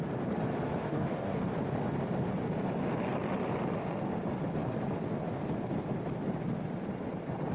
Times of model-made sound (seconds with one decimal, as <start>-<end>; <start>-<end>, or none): 0.8-1.5

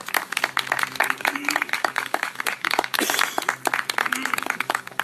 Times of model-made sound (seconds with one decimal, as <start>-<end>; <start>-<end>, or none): 1.0-3.0; 4.0-5.0

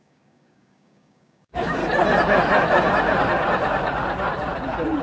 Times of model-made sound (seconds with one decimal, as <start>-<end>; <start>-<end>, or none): 0.0-1.8